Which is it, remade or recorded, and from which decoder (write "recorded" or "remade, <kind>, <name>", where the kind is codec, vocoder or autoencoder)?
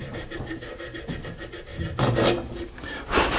recorded